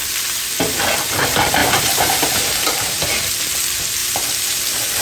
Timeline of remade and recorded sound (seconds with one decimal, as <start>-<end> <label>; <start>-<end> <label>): 0.0-0.7 remade; 0.7-1.6 recorded; 1.6-3.3 remade; 3.3-4.0 recorded; 4.0-5.0 remade

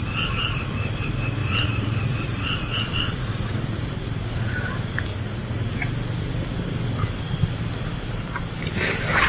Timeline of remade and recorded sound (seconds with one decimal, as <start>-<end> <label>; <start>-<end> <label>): 0.0-1.4 recorded; 1.4-4.5 remade; 4.5-9.3 recorded

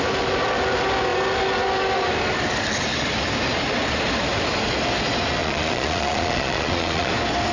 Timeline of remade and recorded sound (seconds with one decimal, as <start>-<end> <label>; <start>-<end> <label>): 0.0-5.4 recorded; 5.4-7.1 remade; 7.1-7.5 recorded

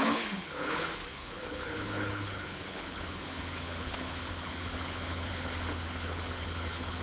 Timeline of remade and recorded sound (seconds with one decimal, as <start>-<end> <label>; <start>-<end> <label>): 0.0-7.0 remade

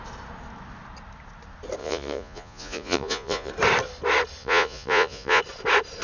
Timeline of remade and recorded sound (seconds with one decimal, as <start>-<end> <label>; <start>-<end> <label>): 0.0-1.8 recorded; 1.8-3.5 remade; 3.5-4.4 recorded; 4.4-5.4 remade; 5.4-6.0 recorded

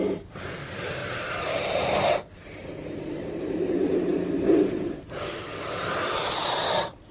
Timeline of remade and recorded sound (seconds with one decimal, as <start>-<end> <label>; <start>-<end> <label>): 0.0-1.0 recorded; 1.0-3.6 remade; 3.6-7.1 recorded

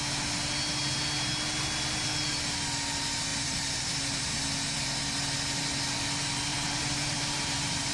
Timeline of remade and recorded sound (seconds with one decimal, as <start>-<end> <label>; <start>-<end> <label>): 0.0-3.3 recorded; 3.3-4.4 remade; 4.4-6.5 recorded; 6.5-7.9 remade

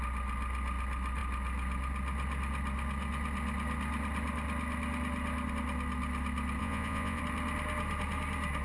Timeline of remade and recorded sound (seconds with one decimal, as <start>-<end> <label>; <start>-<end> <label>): 0.0-6.6 recorded; 6.6-7.2 remade; 7.2-8.6 recorded